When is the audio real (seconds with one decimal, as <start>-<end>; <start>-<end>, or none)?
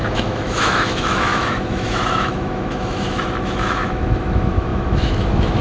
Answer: none